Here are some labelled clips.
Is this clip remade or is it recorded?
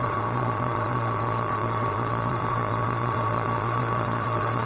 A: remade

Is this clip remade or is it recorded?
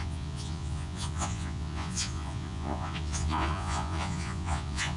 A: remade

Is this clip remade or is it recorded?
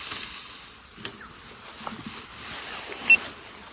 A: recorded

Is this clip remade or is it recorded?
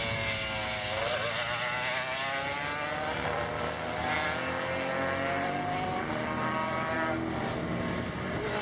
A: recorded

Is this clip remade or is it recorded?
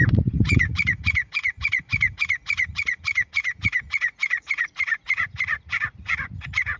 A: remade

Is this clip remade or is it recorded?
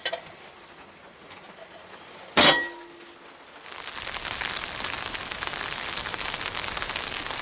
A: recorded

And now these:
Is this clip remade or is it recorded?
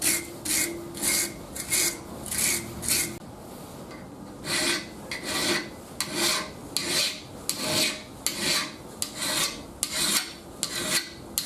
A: recorded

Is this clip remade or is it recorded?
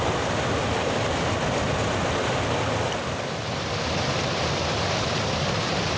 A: recorded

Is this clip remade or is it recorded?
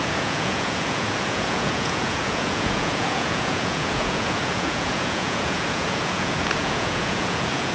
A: remade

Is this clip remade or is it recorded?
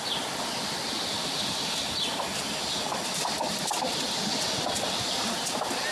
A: recorded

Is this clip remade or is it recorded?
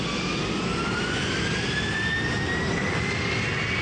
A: recorded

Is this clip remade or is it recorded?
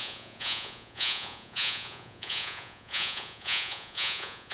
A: remade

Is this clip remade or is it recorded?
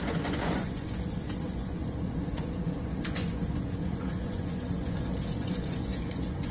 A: remade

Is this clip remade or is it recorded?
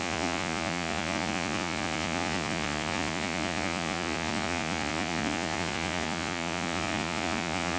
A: remade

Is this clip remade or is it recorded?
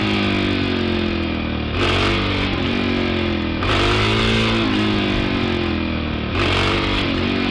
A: recorded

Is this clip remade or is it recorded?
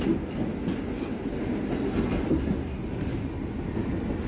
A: recorded